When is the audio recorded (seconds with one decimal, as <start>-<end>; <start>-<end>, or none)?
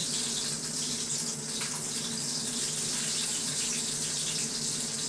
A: 0.0-5.1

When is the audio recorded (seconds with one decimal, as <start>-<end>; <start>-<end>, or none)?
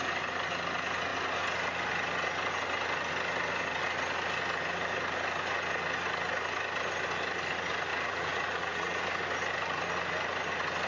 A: 0.0-7.9; 9.0-10.9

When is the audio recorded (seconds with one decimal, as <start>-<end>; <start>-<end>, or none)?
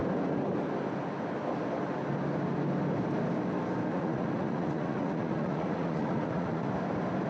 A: 0.0-3.9; 6.7-7.3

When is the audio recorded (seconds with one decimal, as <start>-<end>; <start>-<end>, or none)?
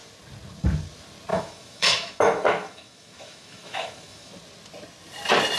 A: 0.0-1.3; 4.3-5.6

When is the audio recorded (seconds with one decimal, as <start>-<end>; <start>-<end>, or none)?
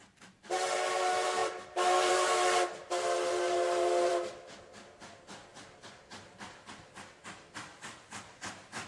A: 0.0-8.9